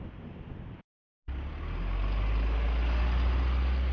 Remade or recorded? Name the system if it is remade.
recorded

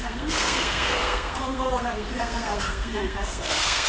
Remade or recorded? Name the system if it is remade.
remade, codec, SNAC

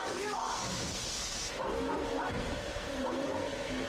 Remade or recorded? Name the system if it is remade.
remade, codec, SNAC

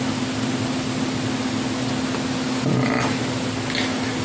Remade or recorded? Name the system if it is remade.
recorded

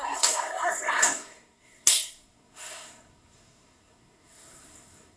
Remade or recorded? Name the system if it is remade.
remade, codec, SNAC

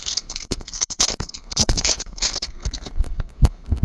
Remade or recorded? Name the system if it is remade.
remade, codec, SNAC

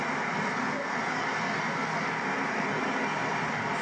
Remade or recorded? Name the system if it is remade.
recorded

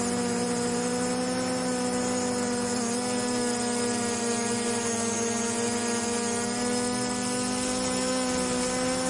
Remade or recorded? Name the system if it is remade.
recorded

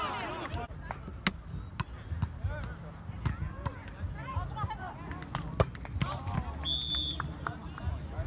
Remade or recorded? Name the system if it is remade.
recorded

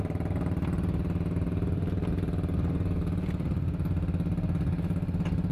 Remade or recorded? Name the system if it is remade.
recorded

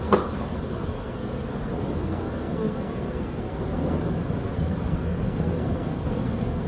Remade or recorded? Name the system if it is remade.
remade, codec, SNAC